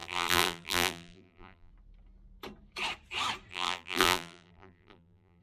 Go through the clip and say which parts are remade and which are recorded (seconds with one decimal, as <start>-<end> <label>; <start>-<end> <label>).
0.0-1.7 remade; 1.7-3.5 recorded; 3.5-5.4 remade